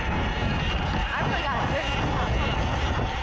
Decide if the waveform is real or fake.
real